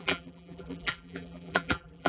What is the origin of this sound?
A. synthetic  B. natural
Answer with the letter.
A